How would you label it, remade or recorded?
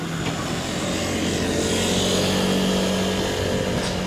recorded